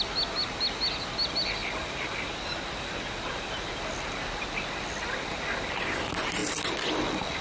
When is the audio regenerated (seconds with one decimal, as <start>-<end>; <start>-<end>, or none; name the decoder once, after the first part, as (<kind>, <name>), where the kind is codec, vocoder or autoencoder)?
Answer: none